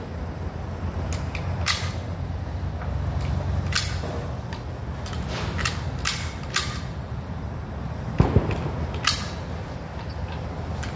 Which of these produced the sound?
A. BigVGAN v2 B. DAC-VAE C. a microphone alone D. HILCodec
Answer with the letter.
C